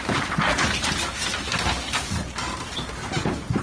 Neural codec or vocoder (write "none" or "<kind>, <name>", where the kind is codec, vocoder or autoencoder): none